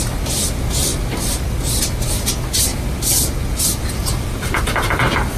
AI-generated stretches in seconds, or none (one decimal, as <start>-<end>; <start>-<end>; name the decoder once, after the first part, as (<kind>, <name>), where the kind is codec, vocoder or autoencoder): none